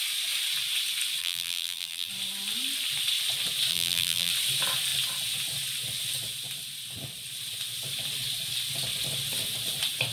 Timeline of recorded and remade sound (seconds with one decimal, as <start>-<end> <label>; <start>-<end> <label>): 0.0-1.2 recorded; 1.2-2.1 remade; 2.1-3.7 recorded; 3.7-4.3 remade; 4.3-10.1 recorded